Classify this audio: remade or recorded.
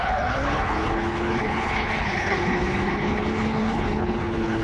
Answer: remade